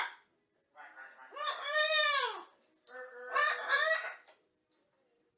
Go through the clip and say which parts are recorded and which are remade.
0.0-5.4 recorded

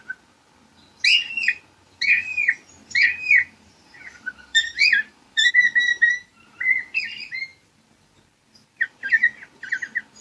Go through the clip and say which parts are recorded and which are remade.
0.0-2.3 recorded; 2.3-5.5 remade; 5.5-5.9 recorded; 5.9-6.6 remade; 6.6-10.2 recorded

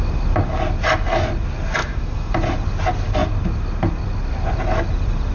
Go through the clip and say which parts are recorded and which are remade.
0.0-1.8 recorded; 1.8-2.3 remade; 2.3-5.3 recorded

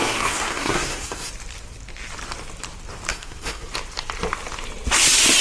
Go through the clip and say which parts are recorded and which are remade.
0.0-1.3 remade; 1.3-3.1 recorded; 3.1-3.7 remade; 3.7-5.4 recorded

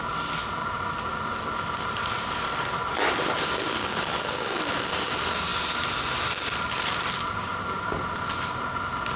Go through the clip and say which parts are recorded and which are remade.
0.0-9.2 recorded

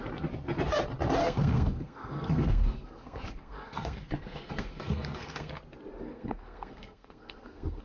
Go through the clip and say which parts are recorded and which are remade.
0.0-1.2 recorded; 1.2-5.5 remade; 5.5-6.1 recorded; 6.1-7.8 remade